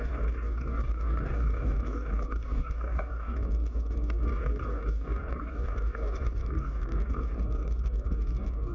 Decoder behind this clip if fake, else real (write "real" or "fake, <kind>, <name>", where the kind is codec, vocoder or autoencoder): fake, codec, DAC